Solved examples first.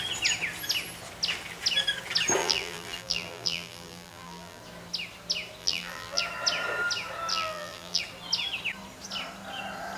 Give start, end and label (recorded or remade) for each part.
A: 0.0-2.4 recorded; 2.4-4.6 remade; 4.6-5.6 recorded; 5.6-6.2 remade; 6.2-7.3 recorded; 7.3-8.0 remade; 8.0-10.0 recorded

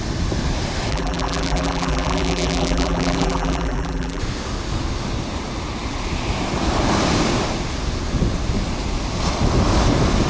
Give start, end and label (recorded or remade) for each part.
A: 0.0-0.9 recorded; 0.9-4.2 remade; 4.2-10.3 recorded

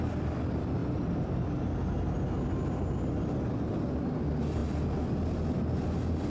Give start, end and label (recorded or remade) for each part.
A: 0.0-6.3 recorded